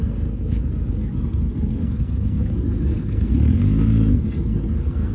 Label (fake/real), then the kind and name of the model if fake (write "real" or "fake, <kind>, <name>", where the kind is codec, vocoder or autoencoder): fake, codec, SNAC